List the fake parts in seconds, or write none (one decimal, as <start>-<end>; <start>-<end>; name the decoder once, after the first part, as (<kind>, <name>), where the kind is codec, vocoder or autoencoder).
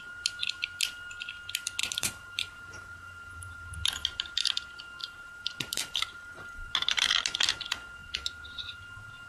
1.8-3.7 (vocoder, BigVGAN v2); 5.0-7.0; 8.0-8.8